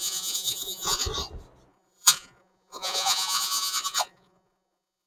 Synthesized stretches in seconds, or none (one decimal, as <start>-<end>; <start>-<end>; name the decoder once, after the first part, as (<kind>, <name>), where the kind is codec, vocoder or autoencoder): 0.0-1.1 (vocoder, Vocos); 1.7-5.1